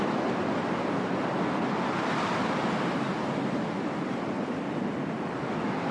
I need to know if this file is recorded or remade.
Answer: recorded